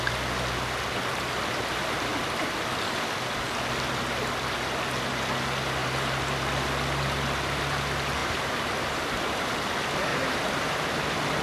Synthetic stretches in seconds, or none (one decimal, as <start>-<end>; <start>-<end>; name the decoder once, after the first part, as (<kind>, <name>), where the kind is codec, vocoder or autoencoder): 5.8-6.4 (vocoder, BigVGAN v2); 8.2-9.5; 10.1-11.0